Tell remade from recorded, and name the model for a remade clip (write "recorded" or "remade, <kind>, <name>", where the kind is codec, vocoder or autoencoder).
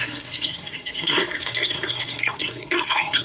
remade, codec, SNAC